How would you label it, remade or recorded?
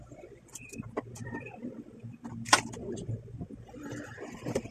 remade